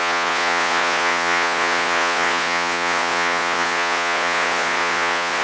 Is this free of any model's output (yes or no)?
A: no